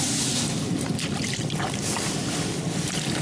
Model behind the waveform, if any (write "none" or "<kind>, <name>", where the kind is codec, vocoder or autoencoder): vocoder, BigVGAN v2